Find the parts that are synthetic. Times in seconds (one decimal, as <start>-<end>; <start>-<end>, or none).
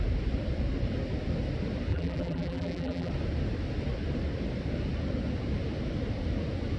1.9-3.1